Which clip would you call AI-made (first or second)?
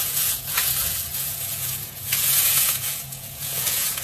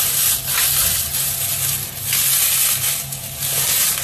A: first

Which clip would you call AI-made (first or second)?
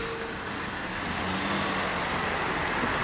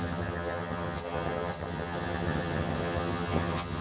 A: second